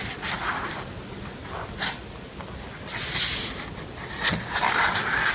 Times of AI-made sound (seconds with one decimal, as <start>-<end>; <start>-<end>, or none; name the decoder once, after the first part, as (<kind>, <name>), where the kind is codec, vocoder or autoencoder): none